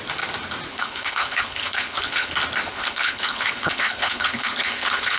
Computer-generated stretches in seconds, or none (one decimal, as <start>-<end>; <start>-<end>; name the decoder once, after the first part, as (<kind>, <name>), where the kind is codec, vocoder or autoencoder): 0.7-2.3 (codec, HILCodec); 2.7-5.2